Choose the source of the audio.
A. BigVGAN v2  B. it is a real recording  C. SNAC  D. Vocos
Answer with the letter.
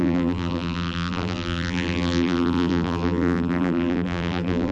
A